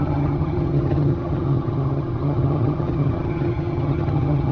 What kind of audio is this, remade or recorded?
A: remade